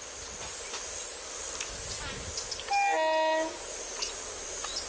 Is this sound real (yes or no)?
yes